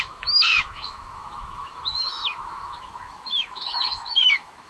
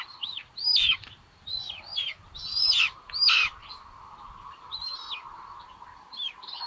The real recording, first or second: second